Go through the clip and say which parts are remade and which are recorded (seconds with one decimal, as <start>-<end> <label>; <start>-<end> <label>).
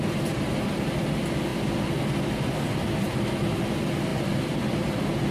0.0-5.3 recorded